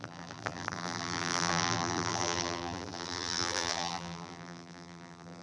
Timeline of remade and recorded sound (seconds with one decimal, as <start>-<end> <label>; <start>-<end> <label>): 0.0-5.4 remade